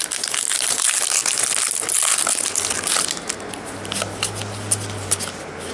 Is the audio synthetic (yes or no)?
no